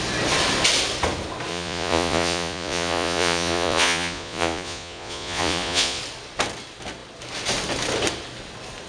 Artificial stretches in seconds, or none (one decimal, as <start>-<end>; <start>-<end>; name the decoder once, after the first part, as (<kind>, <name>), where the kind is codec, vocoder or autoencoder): 1.5-6.0 (vocoder, Vocos)